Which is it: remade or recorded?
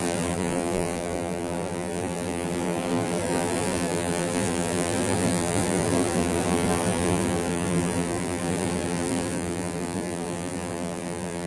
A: remade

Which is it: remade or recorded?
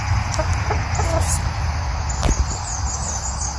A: recorded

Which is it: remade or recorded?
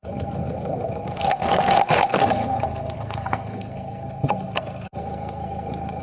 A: remade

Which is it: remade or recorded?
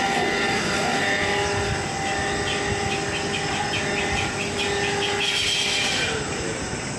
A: recorded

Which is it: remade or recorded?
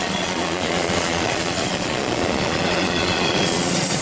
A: remade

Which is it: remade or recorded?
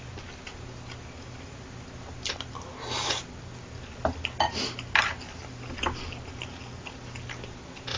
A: recorded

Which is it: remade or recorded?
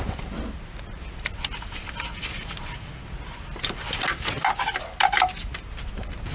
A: recorded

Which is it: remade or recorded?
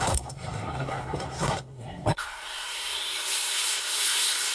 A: remade